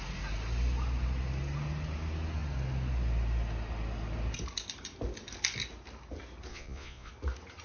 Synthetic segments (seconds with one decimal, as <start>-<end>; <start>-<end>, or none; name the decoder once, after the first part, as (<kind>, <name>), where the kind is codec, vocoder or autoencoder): 6.5-7.1 (vocoder, Vocos)